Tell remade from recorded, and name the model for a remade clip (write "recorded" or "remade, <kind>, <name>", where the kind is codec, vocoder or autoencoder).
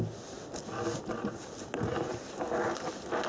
recorded